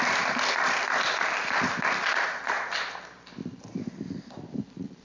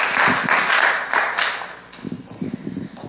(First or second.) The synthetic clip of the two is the first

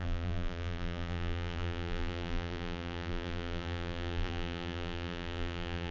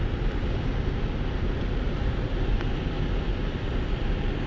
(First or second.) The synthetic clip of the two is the first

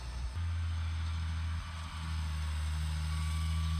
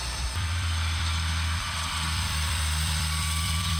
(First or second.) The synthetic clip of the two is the second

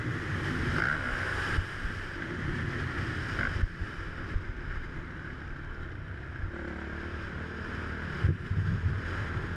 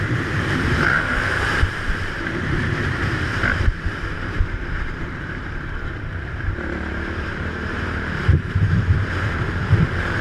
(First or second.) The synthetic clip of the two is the second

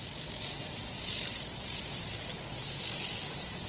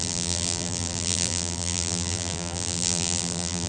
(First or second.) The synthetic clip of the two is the second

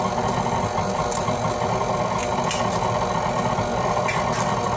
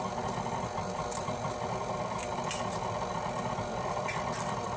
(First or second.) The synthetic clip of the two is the second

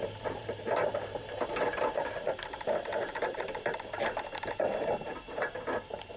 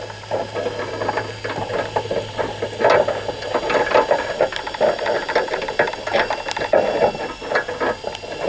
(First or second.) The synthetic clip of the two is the first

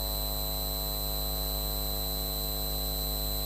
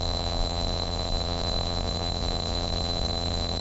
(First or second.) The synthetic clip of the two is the second